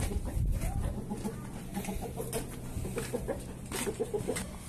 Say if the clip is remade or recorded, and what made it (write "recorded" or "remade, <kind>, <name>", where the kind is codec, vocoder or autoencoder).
recorded